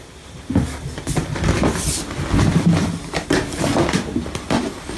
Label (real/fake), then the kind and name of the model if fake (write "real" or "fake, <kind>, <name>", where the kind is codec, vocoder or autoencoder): real